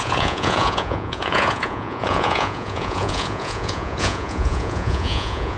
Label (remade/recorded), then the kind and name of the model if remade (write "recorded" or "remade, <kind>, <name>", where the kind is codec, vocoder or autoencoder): remade, vocoder, Vocos